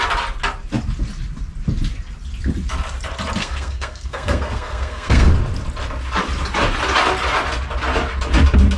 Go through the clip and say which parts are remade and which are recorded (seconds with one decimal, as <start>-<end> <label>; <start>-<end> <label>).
0.0-3.4 recorded; 3.4-5.3 remade; 5.3-8.8 recorded